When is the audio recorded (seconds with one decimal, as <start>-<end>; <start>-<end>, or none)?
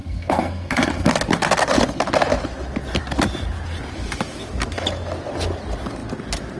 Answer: 1.1-6.6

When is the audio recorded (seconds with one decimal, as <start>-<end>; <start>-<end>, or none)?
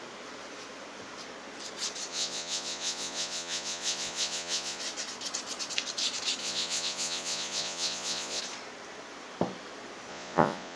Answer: 0.0-2.1; 4.8-6.4; 8.4-10.1